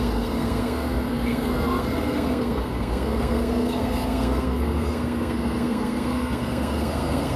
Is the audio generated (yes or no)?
yes